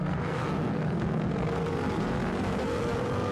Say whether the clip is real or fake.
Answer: fake